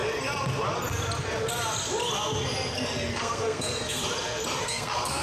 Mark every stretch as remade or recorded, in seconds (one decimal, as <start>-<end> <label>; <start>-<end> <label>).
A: 0.0-3.1 recorded; 3.1-4.0 remade; 4.0-4.6 recorded; 4.6-5.2 remade